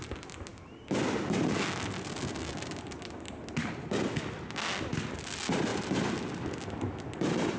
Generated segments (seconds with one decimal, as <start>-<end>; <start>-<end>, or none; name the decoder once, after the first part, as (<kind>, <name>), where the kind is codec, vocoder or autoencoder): none